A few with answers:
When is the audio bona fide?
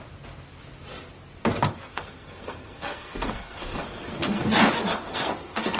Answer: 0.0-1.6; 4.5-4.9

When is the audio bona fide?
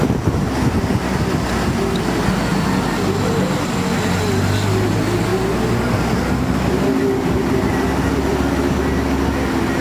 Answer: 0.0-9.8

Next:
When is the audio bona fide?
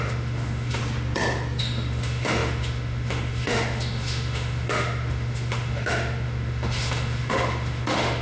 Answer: 0.8-1.6